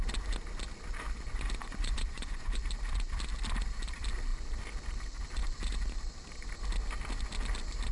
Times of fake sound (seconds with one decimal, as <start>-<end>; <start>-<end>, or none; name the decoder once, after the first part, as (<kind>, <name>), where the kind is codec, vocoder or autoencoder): 1.6-2.6 (vocoder, Vocos)